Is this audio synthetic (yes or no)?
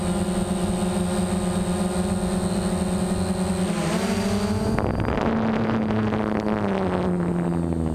no